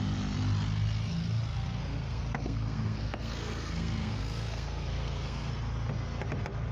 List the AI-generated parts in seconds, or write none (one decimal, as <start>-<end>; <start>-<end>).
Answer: 1.5-5.5